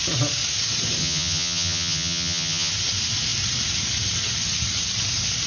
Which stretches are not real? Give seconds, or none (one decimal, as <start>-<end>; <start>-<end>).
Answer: 1.0-2.7